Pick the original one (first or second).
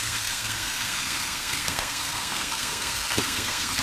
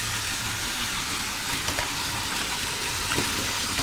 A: second